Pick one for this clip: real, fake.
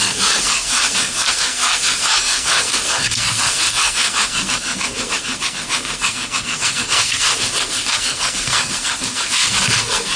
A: fake